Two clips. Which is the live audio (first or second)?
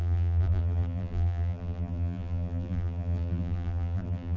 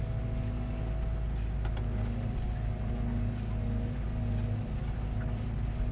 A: second